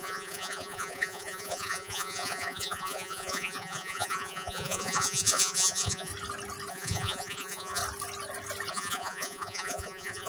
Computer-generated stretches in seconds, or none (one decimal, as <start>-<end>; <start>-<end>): 0.0-6.1; 6.7-7.8; 8.7-10.3